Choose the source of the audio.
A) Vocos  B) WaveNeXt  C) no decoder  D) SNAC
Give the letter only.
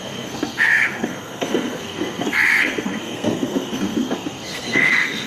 D